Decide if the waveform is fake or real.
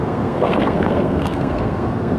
fake